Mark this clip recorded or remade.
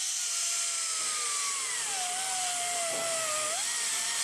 recorded